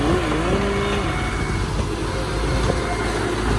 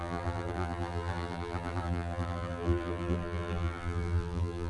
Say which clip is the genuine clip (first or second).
first